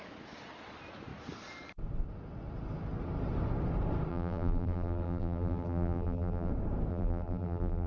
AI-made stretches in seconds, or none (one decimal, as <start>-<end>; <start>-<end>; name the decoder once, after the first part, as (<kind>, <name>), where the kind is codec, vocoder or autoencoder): 4.1-6.5 (vocoder, BigVGAN v2); 6.9-7.9